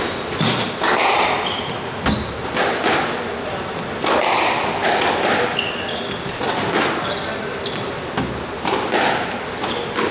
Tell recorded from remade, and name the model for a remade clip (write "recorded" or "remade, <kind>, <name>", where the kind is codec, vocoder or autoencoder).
recorded